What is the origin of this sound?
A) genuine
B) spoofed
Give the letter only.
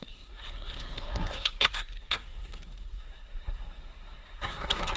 B